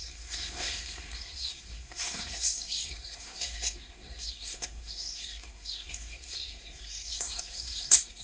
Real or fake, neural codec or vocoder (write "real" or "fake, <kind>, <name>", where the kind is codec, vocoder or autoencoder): fake, codec, SNAC